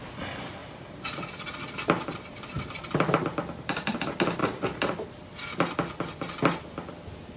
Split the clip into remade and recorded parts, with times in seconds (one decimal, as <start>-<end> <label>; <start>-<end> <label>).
0.0-0.6 recorded; 0.6-3.2 remade; 3.2-4.4 recorded; 4.4-5.1 remade; 5.1-7.4 recorded